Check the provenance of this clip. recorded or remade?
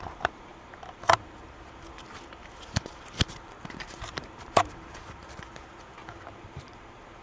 remade